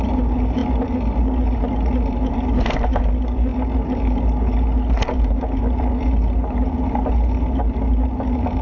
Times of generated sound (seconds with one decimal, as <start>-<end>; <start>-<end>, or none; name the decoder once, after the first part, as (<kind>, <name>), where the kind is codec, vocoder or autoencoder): none